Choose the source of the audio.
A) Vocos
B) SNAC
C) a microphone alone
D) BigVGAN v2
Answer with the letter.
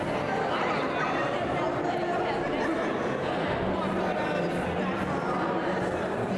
C